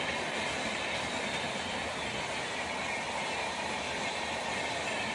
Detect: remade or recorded recorded